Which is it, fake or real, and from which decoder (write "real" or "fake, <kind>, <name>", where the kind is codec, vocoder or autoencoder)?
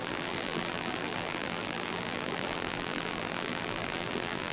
fake, vocoder, BigVGAN v2